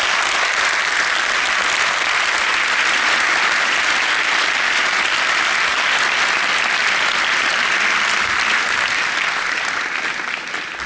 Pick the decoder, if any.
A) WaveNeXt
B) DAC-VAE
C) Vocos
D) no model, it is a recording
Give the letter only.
D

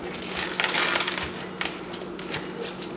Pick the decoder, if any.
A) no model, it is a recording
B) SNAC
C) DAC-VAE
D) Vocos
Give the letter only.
A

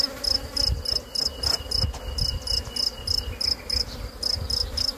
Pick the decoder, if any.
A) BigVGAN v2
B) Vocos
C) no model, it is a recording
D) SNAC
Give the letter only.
C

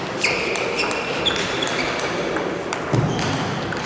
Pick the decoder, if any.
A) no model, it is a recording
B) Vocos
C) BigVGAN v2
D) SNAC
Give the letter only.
A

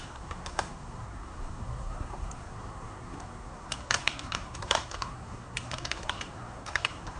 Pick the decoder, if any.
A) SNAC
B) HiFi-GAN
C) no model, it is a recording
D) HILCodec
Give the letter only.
A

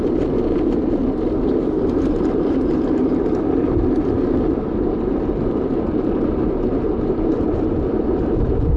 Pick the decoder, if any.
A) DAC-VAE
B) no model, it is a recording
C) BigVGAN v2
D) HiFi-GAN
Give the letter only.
C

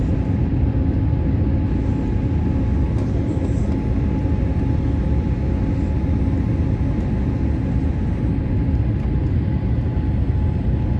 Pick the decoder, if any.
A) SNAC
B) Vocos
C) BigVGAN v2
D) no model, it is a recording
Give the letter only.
D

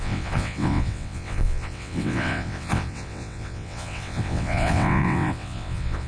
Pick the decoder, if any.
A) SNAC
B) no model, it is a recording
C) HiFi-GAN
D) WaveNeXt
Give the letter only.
D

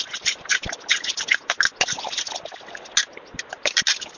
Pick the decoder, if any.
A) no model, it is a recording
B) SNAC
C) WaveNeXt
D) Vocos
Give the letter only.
A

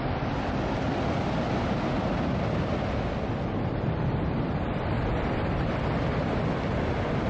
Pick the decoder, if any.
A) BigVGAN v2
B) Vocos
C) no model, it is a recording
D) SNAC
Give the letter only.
C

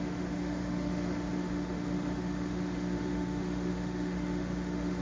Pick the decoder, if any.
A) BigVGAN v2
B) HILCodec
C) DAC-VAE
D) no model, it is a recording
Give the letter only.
C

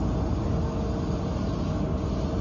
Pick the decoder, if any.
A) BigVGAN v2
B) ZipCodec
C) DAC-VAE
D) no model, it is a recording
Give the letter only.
D